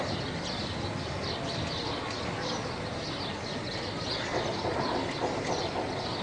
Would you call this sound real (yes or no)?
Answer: yes